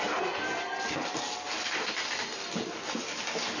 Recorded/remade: recorded